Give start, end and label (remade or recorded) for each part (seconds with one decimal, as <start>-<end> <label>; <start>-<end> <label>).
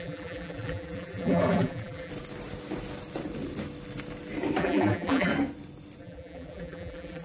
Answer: 0.0-2.1 remade; 2.1-4.6 recorded; 4.6-5.3 remade; 5.3-6.0 recorded; 6.0-7.2 remade